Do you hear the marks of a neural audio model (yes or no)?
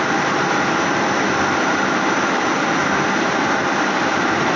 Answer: no